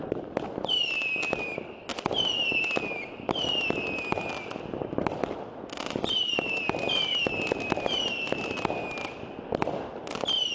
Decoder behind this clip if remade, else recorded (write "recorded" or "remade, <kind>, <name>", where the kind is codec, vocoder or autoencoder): recorded